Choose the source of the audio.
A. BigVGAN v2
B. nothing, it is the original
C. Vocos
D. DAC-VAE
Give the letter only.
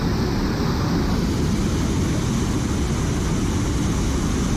B